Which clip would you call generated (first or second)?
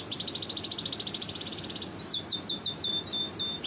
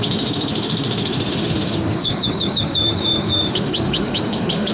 second